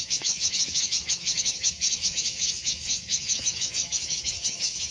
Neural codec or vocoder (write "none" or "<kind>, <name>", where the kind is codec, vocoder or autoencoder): autoencoder, DAC-VAE